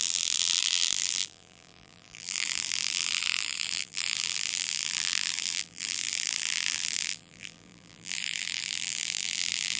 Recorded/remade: remade